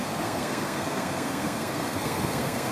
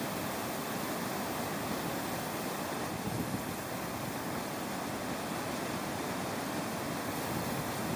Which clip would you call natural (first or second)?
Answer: second